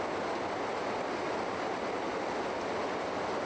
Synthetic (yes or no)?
no